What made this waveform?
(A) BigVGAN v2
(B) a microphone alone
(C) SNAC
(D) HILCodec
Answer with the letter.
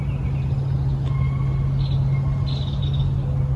B